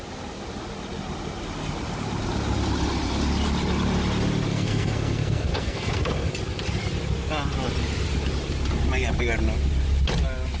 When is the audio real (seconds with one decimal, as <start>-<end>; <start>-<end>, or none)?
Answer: 0.0-4.5; 6.3-10.6